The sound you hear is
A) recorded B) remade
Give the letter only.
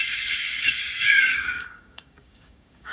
B